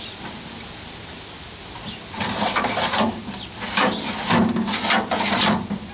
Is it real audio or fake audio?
real